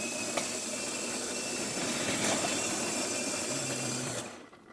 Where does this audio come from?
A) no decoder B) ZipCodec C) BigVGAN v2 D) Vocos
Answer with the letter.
C